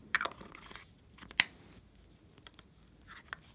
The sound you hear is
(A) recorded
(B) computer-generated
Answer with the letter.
A